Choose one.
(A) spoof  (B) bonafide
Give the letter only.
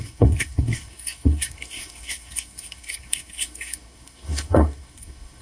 A